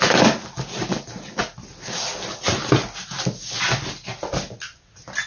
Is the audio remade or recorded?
recorded